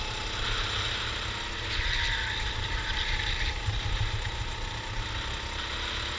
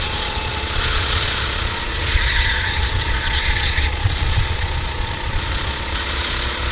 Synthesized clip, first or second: second